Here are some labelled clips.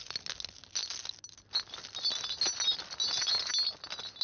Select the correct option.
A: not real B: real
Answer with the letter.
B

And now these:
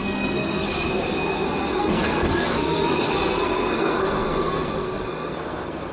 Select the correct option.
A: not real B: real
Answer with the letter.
A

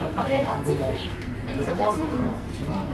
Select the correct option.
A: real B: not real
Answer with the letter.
B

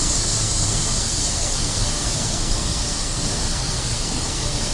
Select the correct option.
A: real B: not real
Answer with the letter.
B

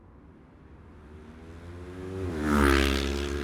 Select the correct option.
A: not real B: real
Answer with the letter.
B